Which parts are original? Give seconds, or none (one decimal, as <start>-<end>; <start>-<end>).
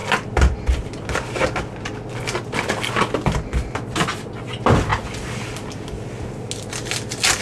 0.0-7.4